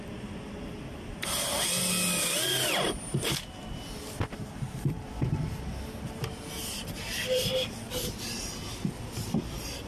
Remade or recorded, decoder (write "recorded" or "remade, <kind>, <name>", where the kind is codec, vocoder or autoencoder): recorded